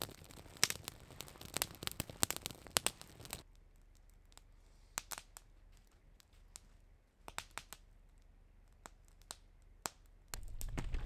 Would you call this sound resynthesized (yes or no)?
no